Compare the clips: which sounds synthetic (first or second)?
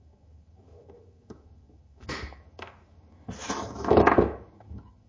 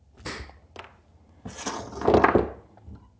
first